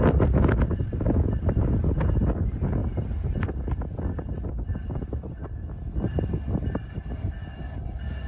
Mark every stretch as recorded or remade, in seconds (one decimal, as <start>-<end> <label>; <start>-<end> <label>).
0.0-8.3 recorded